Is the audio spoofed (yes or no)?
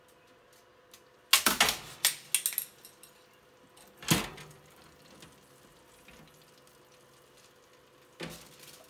no